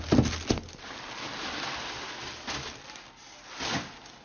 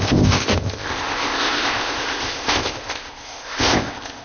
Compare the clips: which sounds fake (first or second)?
second